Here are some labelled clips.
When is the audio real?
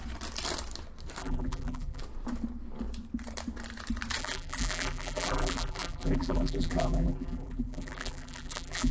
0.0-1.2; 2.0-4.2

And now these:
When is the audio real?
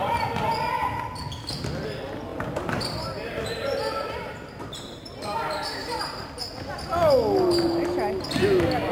0.0-2.3; 6.3-8.9